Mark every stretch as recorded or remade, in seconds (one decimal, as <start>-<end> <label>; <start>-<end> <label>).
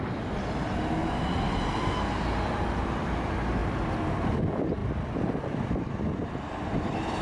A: 0.0-7.2 recorded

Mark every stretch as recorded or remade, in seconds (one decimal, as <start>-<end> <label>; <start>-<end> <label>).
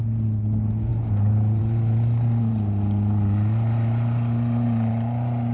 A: 0.0-5.5 recorded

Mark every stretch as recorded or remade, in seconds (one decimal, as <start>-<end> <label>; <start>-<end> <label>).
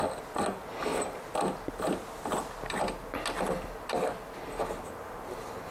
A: 0.0-5.7 recorded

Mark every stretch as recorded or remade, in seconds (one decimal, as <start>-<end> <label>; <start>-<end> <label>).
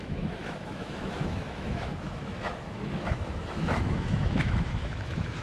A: 0.0-5.4 remade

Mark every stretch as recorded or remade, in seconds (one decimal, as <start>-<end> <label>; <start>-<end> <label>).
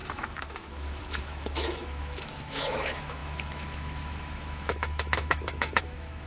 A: 0.0-6.3 remade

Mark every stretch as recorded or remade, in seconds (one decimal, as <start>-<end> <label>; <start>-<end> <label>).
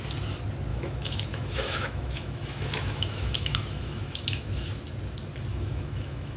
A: 0.0-0.7 recorded; 0.7-4.5 remade; 4.5-5.5 recorded; 5.5-6.4 remade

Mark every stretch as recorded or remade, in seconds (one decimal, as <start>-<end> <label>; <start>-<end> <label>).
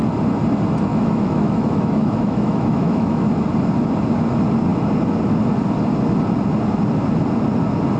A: 0.0-0.9 recorded; 0.9-3.3 remade; 3.3-8.0 recorded